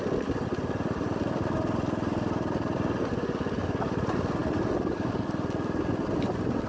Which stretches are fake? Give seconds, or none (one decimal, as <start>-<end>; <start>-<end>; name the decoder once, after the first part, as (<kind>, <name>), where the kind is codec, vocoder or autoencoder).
none

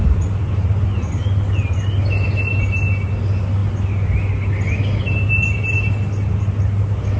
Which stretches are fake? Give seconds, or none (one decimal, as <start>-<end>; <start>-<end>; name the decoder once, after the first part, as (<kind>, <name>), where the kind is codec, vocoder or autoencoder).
none

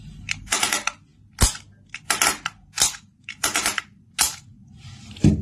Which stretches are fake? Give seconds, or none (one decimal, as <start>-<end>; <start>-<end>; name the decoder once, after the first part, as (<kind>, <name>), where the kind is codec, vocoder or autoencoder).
3.1-4.0 (vocoder, BigVGAN v2)

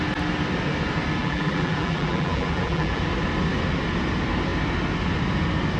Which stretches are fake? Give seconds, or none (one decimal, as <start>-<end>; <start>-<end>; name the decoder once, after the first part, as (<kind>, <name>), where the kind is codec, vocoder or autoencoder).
1.2-3.0 (vocoder, BigVGAN v2)

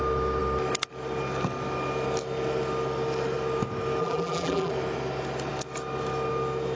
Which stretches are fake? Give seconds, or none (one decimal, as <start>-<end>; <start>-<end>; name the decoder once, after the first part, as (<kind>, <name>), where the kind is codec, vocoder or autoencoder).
4.0-4.7 (vocoder, BigVGAN v2)